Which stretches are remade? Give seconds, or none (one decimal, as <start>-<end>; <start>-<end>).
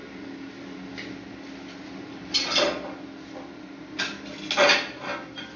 none